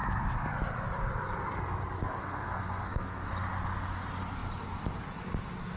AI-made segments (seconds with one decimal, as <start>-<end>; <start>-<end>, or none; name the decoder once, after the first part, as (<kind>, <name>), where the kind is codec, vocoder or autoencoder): 2.2-3.3 (codec, SNAC)